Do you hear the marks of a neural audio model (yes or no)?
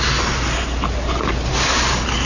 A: no